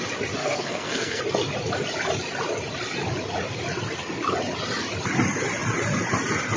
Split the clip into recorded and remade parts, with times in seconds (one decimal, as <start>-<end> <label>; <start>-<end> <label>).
0.0-0.4 recorded; 0.4-1.2 remade; 1.2-6.6 recorded